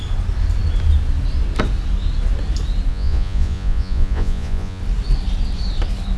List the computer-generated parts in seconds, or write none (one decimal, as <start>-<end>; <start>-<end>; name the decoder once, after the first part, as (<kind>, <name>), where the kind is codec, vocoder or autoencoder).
2.9-4.8 (vocoder, Vocos)